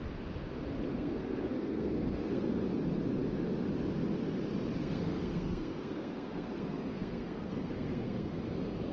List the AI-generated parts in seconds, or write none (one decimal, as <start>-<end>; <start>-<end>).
0.9-2.4; 4.8-8.4